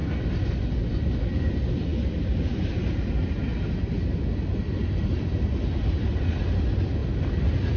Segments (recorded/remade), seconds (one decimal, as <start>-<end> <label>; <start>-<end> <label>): 0.0-7.8 recorded